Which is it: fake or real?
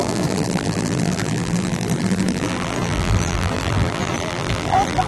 fake